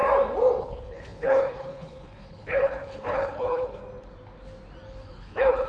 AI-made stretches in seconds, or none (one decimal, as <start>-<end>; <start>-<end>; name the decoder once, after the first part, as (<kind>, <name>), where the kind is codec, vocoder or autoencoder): 0.6-3.8 (codec, HILCodec); 4.9-5.7